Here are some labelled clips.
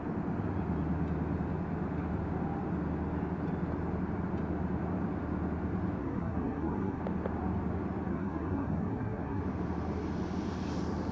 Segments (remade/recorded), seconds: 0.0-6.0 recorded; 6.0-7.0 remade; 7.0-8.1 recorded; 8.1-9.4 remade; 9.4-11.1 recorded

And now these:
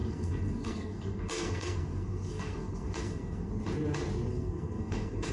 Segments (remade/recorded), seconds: 0.0-3.5 remade; 3.5-4.3 recorded; 4.3-5.3 remade

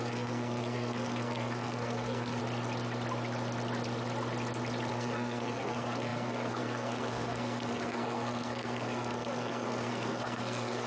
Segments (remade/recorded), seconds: 0.0-2.4 remade; 2.4-4.9 recorded; 4.9-10.9 remade

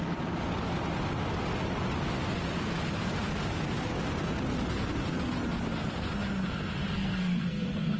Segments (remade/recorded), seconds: 0.0-6.9 recorded; 6.9-8.0 remade

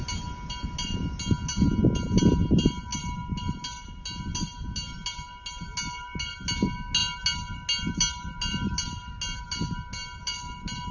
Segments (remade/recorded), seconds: 0.0-10.9 recorded

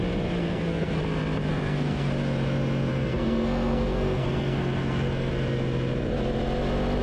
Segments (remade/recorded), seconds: 0.0-0.4 recorded; 0.4-1.0 remade; 1.0-1.5 recorded; 1.5-2.1 remade; 2.1-2.9 recorded; 2.9-5.3 remade; 5.3-7.0 recorded

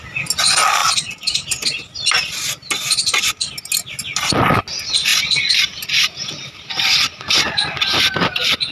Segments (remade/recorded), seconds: 0.0-8.7 recorded

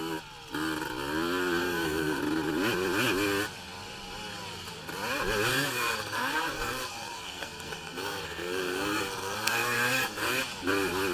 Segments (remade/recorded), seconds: 0.0-1.6 recorded; 1.6-2.2 remade; 2.2-5.5 recorded; 5.5-10.4 remade; 10.4-11.1 recorded